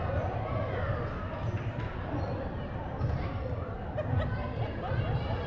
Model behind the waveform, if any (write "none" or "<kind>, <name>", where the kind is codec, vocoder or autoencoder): none